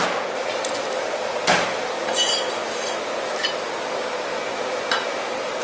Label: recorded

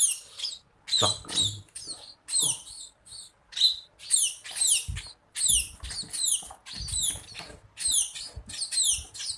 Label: recorded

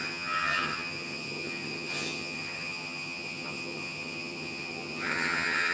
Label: remade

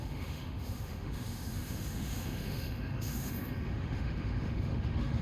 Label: remade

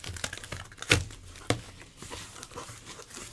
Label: recorded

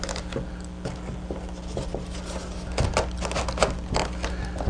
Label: recorded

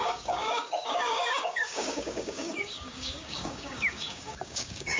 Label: remade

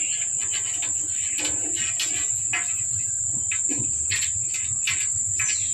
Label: recorded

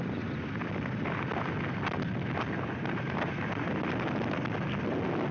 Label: recorded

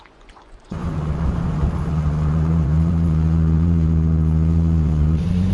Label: remade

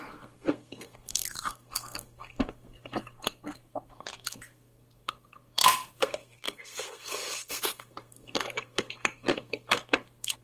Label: remade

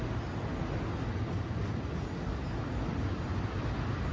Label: recorded